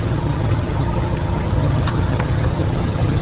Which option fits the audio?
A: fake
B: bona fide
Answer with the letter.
A